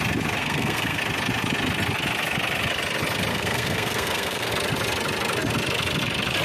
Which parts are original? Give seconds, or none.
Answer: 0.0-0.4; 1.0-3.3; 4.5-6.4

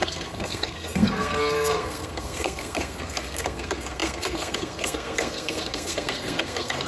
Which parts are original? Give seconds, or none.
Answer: none

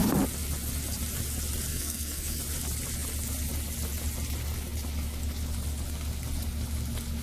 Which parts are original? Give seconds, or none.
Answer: 0.0-1.7; 2.4-7.2

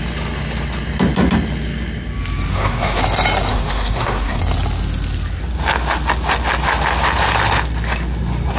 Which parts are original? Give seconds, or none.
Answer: 0.0-2.5; 3.0-3.5; 4.4-8.6

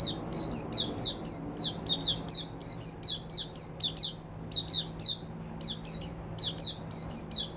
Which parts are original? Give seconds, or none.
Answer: 0.0-7.6